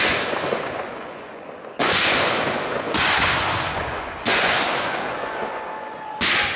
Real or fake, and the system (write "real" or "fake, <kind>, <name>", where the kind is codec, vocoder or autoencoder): fake, vocoder, Vocos